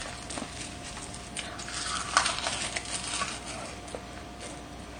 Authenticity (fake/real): real